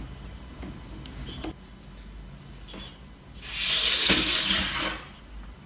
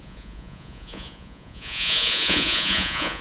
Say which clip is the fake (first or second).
second